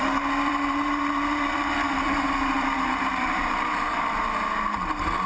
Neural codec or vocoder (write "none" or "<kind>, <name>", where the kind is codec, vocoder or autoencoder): vocoder, BigVGAN v2